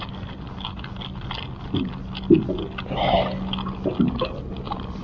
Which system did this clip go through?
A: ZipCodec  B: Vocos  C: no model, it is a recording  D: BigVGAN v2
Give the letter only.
C